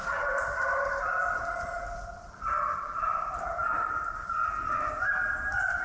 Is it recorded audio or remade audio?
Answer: recorded